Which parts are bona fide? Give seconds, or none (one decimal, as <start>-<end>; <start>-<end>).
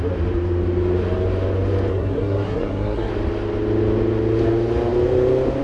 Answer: 0.0-1.9; 3.1-5.6